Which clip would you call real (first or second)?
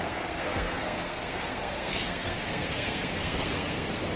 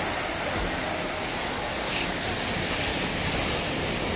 second